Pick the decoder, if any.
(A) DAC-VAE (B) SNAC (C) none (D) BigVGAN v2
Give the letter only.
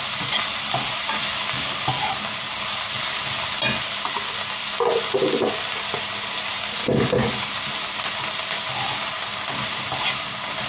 C